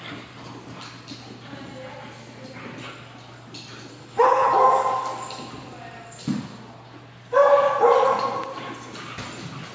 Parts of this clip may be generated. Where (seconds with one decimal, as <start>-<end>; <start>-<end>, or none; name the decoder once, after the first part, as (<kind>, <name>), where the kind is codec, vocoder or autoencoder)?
3.9-4.5 (codec, HILCodec)